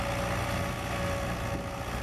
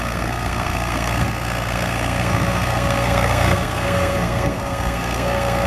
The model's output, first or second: second